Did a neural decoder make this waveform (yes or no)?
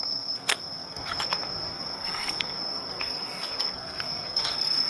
yes